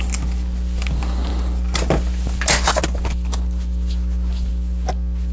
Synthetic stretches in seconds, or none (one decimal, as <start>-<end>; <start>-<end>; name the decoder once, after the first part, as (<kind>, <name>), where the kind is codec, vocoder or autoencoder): none